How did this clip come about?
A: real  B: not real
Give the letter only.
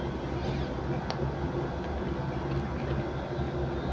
A